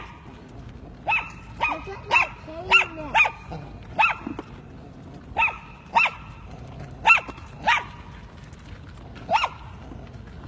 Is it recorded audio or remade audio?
recorded